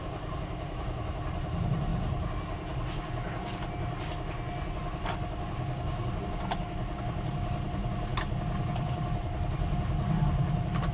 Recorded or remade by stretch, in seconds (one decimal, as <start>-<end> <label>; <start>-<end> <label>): 0.0-10.9 recorded